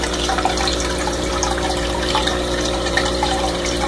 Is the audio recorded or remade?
remade